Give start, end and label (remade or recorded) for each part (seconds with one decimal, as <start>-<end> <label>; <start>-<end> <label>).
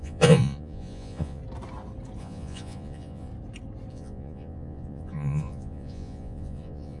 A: 0.0-1.4 remade; 1.4-2.2 recorded; 2.2-3.3 remade; 3.3-3.9 recorded; 3.9-7.0 remade